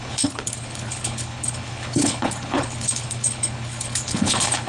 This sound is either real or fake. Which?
fake